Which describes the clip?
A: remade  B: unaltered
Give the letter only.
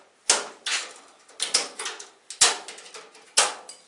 B